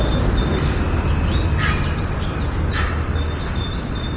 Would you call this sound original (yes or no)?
yes